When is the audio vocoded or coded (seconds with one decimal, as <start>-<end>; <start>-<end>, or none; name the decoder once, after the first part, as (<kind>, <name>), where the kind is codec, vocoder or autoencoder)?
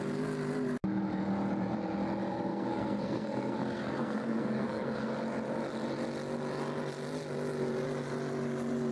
2.5-5.1 (codec, SNAC)